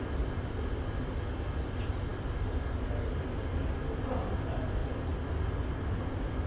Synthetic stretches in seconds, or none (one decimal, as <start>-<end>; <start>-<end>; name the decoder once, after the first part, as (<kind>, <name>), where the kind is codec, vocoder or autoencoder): none